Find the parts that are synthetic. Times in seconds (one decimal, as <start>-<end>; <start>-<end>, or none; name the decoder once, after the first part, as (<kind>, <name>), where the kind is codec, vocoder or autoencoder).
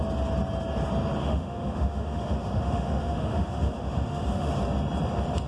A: 1.2-4.5 (autoencoder, DAC-VAE)